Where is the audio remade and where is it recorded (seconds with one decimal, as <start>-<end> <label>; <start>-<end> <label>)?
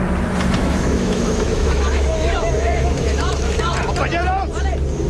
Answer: 0.0-0.6 recorded; 0.6-3.7 remade; 3.7-5.1 recorded